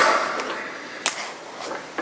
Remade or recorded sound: recorded